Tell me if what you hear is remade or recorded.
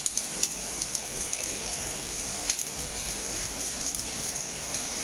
remade